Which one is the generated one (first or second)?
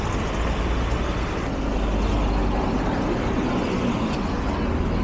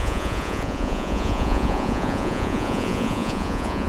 second